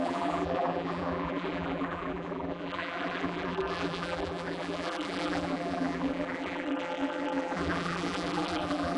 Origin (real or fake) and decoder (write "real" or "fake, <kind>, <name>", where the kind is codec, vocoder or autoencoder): fake, vocoder, BigVGAN v2